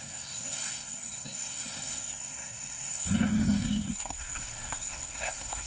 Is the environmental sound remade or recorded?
remade